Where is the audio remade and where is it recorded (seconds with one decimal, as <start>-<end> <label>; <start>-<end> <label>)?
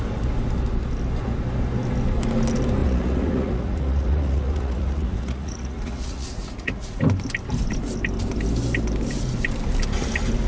0.0-2.8 recorded; 2.8-7.0 remade; 7.0-10.5 recorded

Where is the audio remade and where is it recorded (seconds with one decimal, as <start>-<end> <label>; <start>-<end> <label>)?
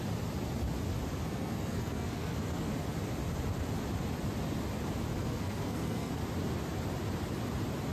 0.0-1.2 recorded; 1.2-2.7 remade; 2.7-5.2 recorded; 5.2-6.1 remade; 6.1-7.9 recorded